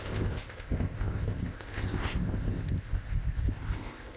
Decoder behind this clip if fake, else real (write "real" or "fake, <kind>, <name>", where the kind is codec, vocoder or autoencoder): fake, codec, ZipCodec